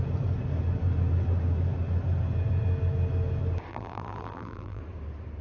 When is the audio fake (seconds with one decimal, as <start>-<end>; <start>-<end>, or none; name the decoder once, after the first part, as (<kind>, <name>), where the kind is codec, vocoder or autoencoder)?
3.7-4.8 (vocoder, BigVGAN v2)